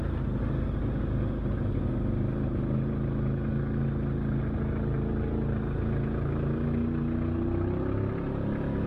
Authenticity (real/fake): real